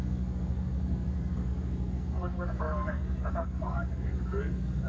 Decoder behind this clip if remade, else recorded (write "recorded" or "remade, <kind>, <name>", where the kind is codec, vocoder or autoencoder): remade, codec, SNAC